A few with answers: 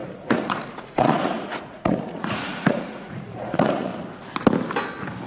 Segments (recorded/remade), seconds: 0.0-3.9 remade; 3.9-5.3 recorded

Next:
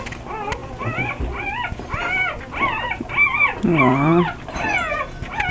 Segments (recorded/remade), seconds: 0.0-5.5 recorded

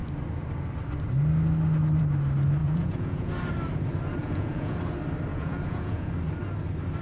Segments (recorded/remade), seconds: 0.0-2.6 recorded; 2.6-3.3 remade; 3.3-4.2 recorded; 4.2-4.8 remade; 4.8-5.3 recorded; 5.3-6.1 remade; 6.1-7.0 recorded

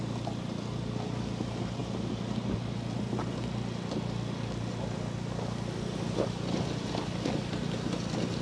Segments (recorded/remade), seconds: 0.0-8.4 recorded

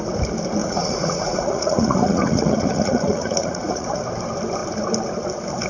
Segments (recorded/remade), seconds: 0.0-0.6 recorded; 0.6-4.0 remade; 4.0-5.7 recorded

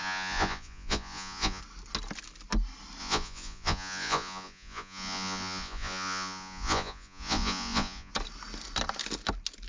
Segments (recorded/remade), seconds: 0.0-1.6 remade; 1.6-3.0 recorded; 3.0-8.1 remade; 8.1-9.7 recorded

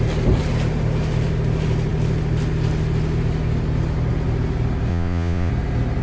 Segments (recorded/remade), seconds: 0.0-4.9 recorded; 4.9-5.5 remade; 5.5-6.0 recorded

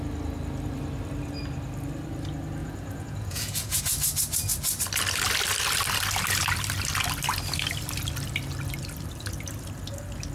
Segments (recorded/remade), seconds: 0.0-2.6 recorded; 2.6-3.8 remade; 3.8-10.3 recorded